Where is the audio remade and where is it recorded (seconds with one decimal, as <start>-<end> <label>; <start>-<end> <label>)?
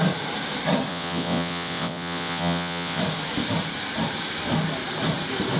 0.0-0.9 recorded; 0.9-3.0 remade; 3.0-5.6 recorded